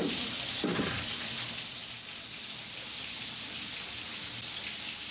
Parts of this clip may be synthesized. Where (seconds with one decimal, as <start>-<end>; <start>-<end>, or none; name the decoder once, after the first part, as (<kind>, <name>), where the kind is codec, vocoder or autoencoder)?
none